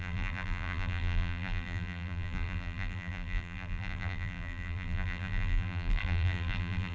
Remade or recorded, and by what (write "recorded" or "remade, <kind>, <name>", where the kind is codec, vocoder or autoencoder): remade, vocoder, BigVGAN v2